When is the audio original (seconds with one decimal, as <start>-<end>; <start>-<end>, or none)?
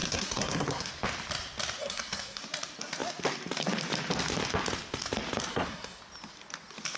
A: 0.9-1.8; 2.4-5.5; 6.0-7.0